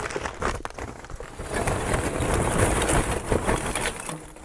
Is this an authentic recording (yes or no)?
yes